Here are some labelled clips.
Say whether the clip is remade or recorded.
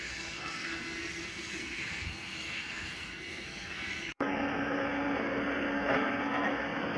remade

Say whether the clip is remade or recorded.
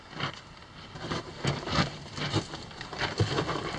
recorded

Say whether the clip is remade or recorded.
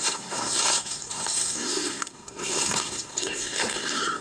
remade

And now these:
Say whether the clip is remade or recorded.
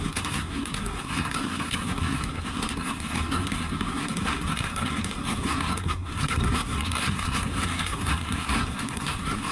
remade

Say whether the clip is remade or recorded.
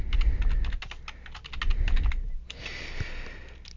recorded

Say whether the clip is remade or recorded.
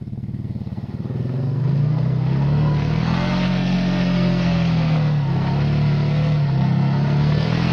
remade